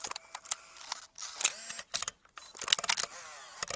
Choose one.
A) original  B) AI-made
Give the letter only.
A